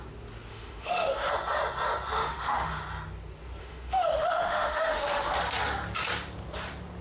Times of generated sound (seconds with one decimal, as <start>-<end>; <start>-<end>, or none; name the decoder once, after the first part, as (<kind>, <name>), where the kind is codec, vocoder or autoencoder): 0.5-1.3 (autoencoder, DAC-VAE); 2.2-2.7; 3.6-5.4